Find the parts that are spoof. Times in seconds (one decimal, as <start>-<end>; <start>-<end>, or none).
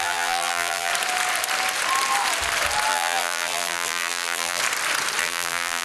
0.0-0.9; 2.9-4.6; 5.2-5.8